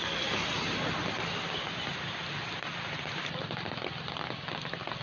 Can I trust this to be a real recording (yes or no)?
yes